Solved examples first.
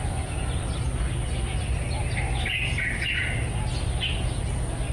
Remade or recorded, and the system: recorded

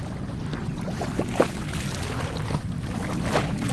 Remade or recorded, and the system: recorded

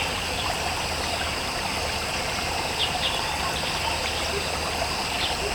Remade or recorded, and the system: recorded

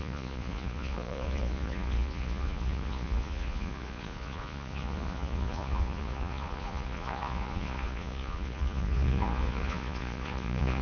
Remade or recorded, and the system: remade, vocoder, Vocos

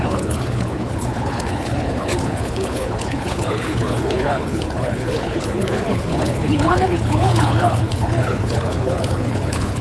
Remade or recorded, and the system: remade, codec, HILCodec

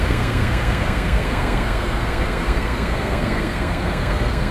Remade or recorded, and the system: remade, codec, SNAC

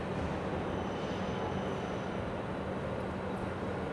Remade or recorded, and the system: recorded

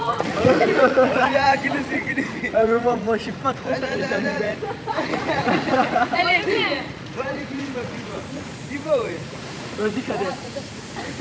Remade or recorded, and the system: remade, vocoder, Vocos